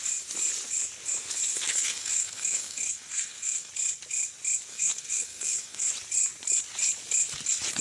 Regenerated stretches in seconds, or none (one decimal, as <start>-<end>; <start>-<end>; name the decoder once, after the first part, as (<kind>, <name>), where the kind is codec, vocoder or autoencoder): 1.7-3.7 (codec, SNAC); 4.7-5.9

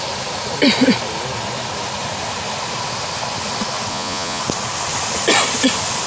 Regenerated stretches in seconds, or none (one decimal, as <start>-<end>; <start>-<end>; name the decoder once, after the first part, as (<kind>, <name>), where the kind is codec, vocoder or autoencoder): 3.9-4.4 (vocoder, Vocos)

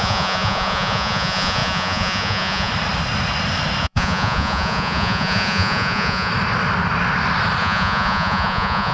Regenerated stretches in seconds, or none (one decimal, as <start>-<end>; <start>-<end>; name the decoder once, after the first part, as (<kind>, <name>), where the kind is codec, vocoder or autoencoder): 0.0-2.7 (vocoder, Vocos); 3.8-6.3; 7.6-8.9

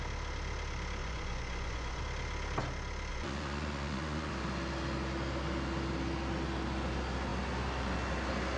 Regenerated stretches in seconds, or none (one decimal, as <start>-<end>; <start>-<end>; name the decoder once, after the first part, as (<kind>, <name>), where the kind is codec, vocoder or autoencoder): 1.0-2.0 (vocoder, Vocos); 3.1-4.3

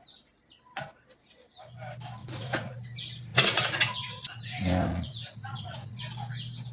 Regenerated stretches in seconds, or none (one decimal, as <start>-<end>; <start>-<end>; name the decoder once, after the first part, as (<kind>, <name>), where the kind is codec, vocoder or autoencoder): 2.2-2.7 (vocoder, Vocos); 3.3-6.0

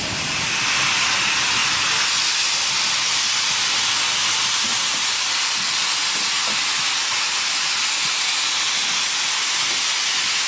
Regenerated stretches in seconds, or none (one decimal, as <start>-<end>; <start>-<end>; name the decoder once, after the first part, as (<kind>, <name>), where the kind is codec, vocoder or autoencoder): none

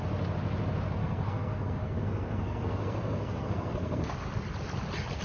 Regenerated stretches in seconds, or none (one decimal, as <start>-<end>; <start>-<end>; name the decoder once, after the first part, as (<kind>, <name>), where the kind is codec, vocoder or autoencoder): 1.0-4.1 (codec, SNAC)

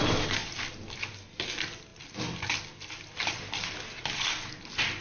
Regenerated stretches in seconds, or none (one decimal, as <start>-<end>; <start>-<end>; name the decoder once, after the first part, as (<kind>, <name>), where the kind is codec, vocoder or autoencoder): none